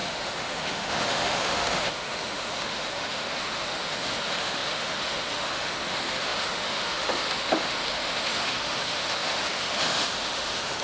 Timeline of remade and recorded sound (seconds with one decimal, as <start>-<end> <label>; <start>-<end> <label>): 0.0-10.8 remade